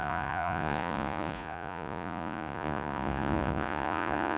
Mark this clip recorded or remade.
remade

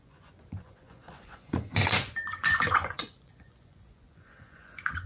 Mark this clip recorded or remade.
remade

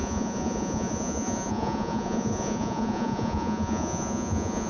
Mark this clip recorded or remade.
remade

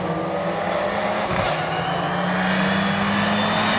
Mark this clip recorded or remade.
recorded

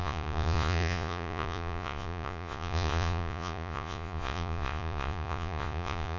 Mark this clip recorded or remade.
remade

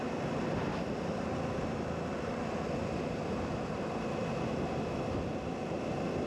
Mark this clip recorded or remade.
recorded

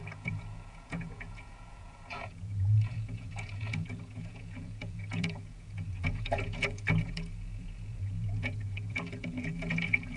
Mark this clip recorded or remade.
remade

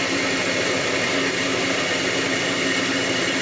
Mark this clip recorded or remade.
recorded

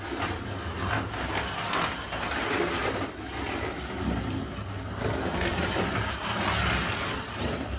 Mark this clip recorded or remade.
recorded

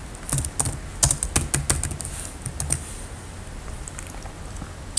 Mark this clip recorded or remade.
recorded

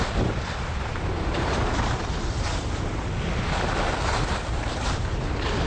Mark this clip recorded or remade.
recorded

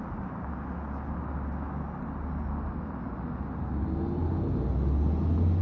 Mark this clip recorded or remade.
recorded